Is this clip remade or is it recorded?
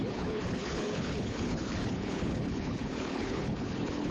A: remade